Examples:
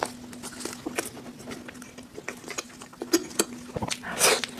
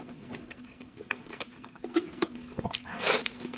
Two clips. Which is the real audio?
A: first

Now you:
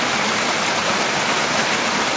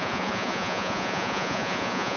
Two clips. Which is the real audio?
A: first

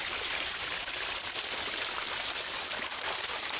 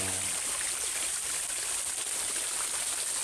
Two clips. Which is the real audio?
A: second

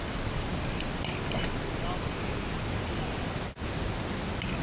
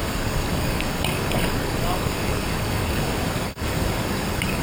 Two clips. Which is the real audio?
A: first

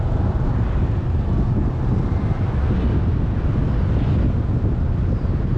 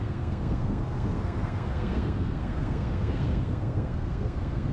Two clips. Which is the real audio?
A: first